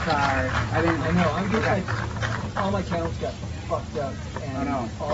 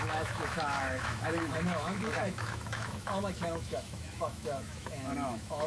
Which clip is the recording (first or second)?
first